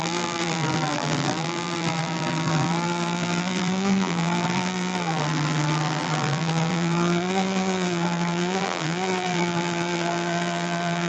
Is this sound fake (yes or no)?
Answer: yes